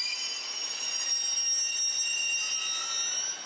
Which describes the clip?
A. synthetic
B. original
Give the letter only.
B